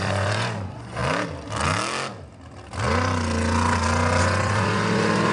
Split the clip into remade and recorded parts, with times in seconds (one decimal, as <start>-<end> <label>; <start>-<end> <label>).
0.0-1.0 remade; 1.0-4.2 recorded; 4.2-5.3 remade